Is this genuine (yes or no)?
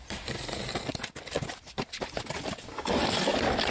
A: yes